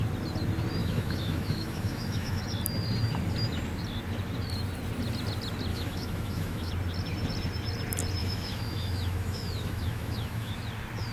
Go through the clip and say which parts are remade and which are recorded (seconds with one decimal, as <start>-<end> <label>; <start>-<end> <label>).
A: 0.0-0.8 recorded; 0.8-2.4 remade; 2.4-5.7 recorded; 5.7-6.7 remade; 6.7-8.2 recorded; 8.2-10.5 remade; 10.5-11.1 recorded